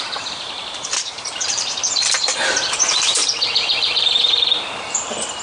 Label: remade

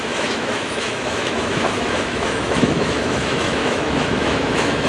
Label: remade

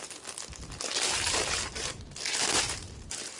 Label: recorded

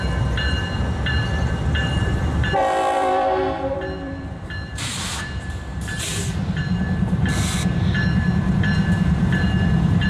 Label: remade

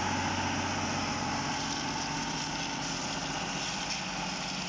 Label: recorded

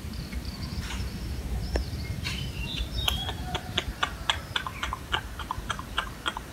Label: remade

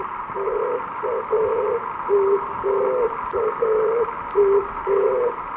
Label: recorded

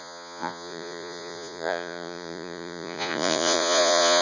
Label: remade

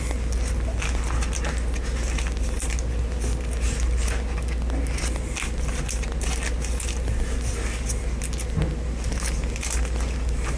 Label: recorded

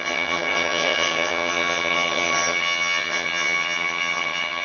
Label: remade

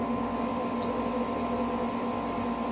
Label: recorded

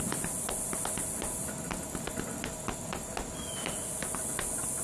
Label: recorded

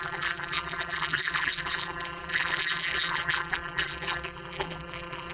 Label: remade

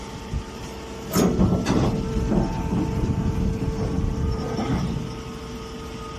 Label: recorded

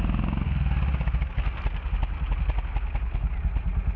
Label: recorded